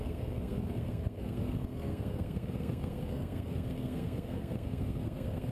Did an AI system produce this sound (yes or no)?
yes